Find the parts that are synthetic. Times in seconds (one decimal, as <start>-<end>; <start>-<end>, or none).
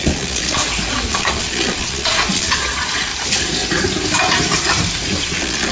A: 0.0-0.6; 1.1-3.1; 5.2-5.7